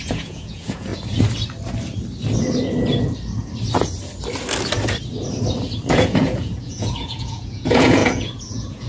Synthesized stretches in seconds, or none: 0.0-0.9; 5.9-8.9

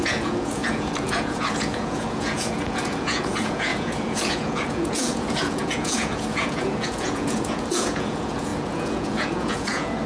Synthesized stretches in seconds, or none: 0.0-10.1

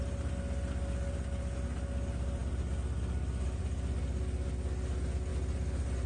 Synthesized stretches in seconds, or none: none

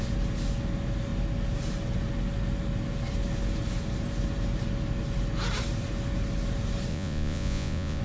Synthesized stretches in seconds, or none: 6.9-8.0

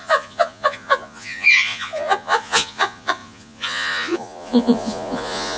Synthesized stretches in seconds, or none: 0.0-5.6